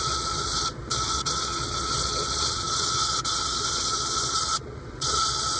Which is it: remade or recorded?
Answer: remade